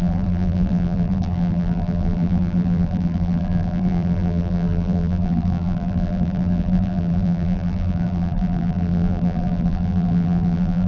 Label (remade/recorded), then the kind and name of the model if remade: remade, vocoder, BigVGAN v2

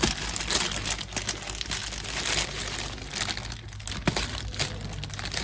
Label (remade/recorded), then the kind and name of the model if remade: recorded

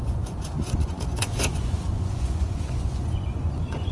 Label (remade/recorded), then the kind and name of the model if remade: remade, vocoder, Vocos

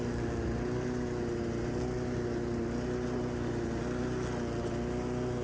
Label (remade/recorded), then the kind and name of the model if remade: recorded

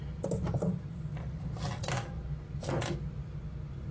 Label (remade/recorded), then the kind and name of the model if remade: recorded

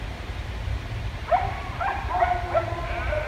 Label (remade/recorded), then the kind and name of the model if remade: recorded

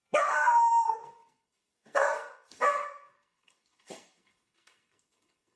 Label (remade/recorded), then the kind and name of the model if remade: remade, codec, SNAC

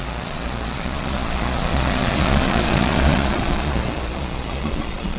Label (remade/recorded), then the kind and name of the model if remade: remade, vocoder, Vocos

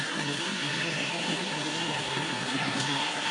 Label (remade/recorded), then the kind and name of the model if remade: remade, codec, SNAC